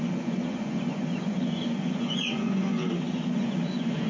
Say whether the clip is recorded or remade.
remade